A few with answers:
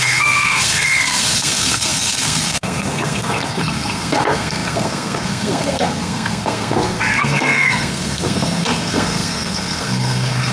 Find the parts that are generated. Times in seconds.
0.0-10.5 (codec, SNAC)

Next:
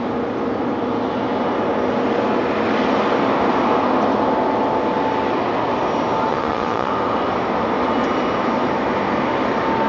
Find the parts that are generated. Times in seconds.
6.3-6.9 (vocoder, Vocos)

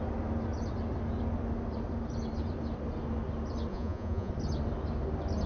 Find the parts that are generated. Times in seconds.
3.7-4.3 (vocoder, Vocos)